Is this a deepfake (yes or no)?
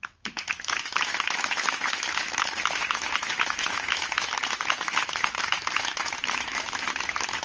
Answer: yes